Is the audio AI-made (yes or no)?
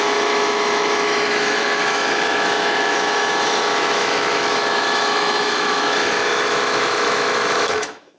yes